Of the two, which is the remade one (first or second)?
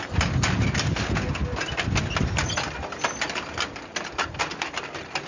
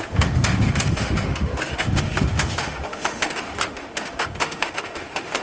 second